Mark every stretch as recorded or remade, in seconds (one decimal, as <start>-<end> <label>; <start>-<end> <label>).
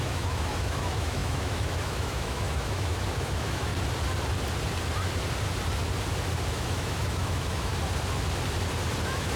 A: 0.0-3.7 remade; 3.7-6.5 recorded; 6.5-7.7 remade; 7.7-9.0 recorded; 9.0-9.4 remade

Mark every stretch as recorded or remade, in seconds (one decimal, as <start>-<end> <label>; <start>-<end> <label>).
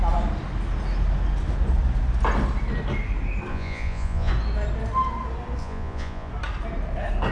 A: 0.0-3.5 recorded; 3.5-4.3 remade; 4.3-5.6 recorded; 5.6-6.3 remade; 6.3-7.3 recorded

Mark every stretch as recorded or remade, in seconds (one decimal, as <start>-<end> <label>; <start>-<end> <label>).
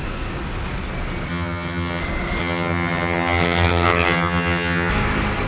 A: 0.0-1.3 recorded; 1.3-2.0 remade; 2.0-2.4 recorded; 2.4-4.9 remade; 4.9-5.5 recorded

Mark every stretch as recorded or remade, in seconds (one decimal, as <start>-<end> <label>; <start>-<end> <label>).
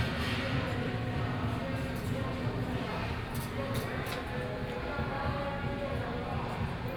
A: 0.0-7.0 recorded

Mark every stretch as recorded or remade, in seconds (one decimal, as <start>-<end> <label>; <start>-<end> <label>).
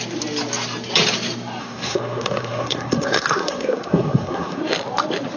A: 0.0-1.6 recorded; 1.6-4.6 remade; 4.6-5.4 recorded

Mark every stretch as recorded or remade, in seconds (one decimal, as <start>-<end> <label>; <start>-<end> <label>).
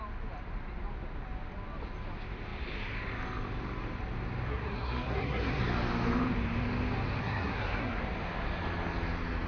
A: 0.0-4.5 recorded; 4.5-5.6 remade; 5.6-7.2 recorded; 7.2-8.0 remade; 8.0-9.5 recorded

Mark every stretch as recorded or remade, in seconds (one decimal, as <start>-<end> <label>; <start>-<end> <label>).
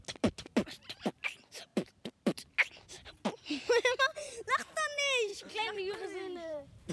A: 0.0-1.7 recorded; 1.7-2.5 remade; 2.5-5.3 recorded; 5.3-6.9 remade